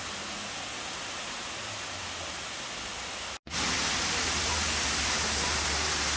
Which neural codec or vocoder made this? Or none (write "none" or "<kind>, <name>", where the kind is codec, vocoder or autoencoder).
none